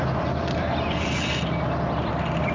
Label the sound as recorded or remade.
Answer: recorded